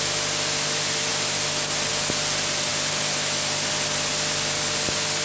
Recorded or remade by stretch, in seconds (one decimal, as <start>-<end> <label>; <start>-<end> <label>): 0.0-5.2 recorded